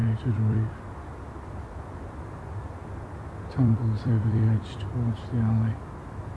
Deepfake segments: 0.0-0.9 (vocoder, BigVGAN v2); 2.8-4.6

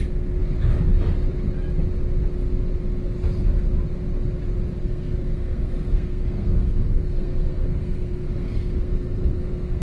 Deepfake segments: 4.8-9.8 (codec, SNAC)

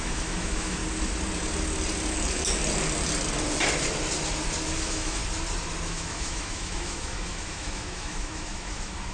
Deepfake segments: 0.0-0.8 (autoencoder, DAC-VAE); 4.8-5.2; 5.9-9.1

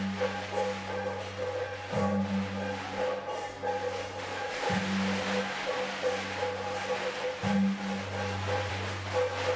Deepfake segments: none

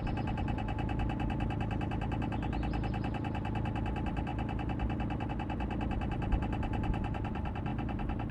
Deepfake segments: none

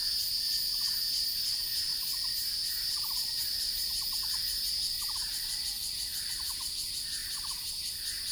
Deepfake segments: 1.9-3.9 (vocoder, BigVGAN v2)

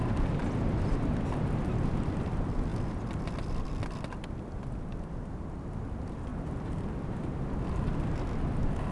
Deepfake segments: none

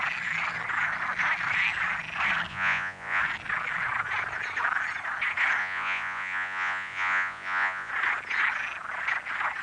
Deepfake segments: 2.5-3.2 (vocoder, Vocos); 5.6-7.9